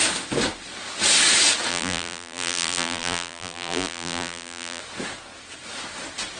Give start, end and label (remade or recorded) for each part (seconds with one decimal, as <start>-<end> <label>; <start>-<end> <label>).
0.0-1.7 recorded; 1.7-4.8 remade; 4.8-6.4 recorded

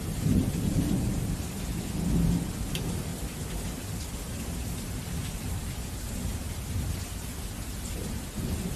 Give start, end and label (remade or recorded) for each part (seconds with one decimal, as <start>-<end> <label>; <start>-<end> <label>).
0.0-8.8 recorded